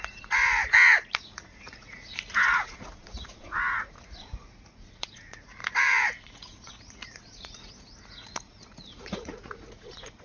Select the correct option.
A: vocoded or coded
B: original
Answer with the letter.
A